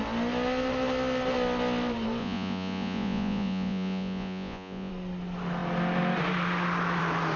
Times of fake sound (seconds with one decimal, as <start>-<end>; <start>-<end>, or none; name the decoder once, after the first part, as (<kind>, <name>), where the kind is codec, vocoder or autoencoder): 2.2-4.9 (vocoder, Vocos)